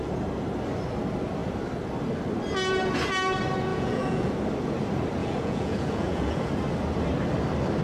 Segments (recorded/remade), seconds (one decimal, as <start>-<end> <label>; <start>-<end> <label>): 0.0-3.7 recorded; 3.7-4.3 remade; 4.3-5.2 recorded; 5.2-6.5 remade; 6.5-7.8 recorded